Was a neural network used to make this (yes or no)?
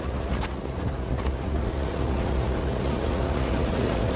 yes